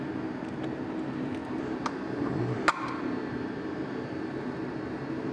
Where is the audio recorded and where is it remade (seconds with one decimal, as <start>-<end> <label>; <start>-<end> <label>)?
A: 0.0-5.3 recorded